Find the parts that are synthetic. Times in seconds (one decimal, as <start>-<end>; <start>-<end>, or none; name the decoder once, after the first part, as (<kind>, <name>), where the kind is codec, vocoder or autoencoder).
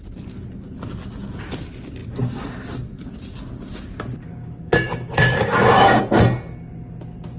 4.3-6.0 (codec, DAC)